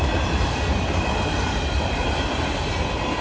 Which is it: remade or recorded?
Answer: recorded